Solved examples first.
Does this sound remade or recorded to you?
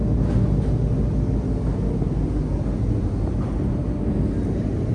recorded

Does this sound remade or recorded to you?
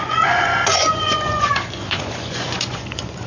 remade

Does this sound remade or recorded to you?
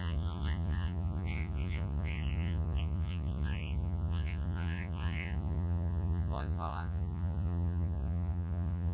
remade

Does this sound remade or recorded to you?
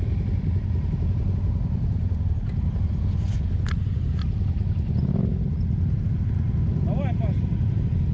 recorded